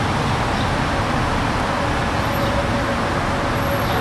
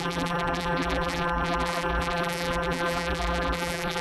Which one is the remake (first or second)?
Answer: second